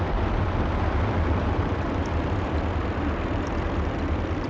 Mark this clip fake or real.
fake